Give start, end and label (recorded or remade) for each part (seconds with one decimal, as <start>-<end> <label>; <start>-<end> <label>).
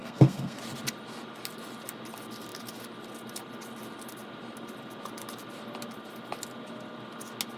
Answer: 0.0-0.6 remade; 0.6-7.6 recorded